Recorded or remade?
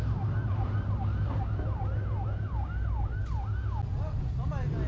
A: recorded